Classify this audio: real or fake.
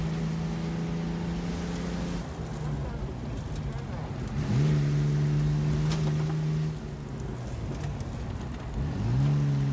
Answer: real